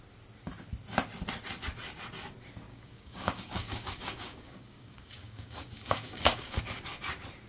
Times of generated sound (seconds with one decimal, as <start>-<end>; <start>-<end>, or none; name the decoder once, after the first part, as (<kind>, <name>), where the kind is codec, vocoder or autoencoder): 2.7-6.6 (codec, DAC)